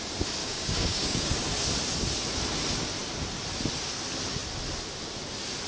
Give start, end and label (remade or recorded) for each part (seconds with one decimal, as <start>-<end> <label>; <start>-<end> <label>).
0.0-0.4 recorded; 0.4-1.3 remade; 1.3-5.7 recorded